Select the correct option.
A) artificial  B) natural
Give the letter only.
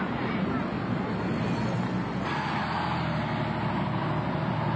B